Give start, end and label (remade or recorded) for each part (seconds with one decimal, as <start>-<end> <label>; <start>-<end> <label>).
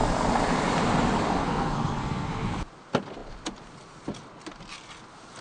0.0-1.4 recorded; 1.4-2.5 remade; 2.5-5.4 recorded